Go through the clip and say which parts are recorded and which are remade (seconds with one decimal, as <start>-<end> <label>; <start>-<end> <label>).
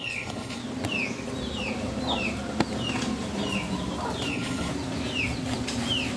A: 0.0-0.6 remade; 0.6-4.3 recorded; 4.3-4.7 remade; 4.7-6.2 recorded